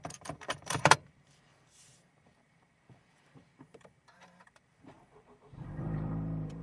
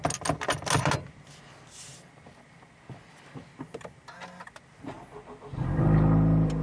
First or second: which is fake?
first